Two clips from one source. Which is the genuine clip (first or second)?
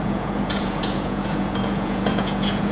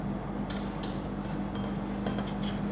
second